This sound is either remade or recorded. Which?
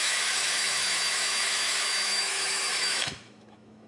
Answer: remade